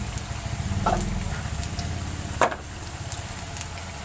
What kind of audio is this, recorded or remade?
recorded